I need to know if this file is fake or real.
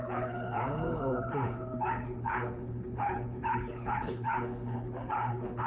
fake